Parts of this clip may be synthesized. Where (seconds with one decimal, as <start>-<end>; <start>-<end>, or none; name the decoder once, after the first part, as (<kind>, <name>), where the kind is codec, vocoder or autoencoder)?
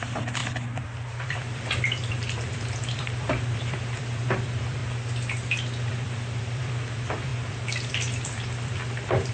0.0-4.8 (vocoder, BigVGAN v2); 5.9-9.3